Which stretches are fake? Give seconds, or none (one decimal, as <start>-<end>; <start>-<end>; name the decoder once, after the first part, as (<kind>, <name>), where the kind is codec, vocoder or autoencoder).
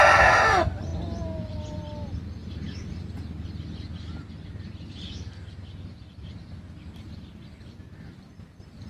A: 2.4-3.0 (vocoder, BigVGAN v2)